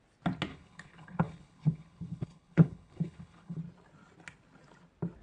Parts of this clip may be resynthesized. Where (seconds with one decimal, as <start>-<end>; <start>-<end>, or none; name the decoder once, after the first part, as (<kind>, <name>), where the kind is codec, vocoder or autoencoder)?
0.5-3.6 (codec, HILCodec)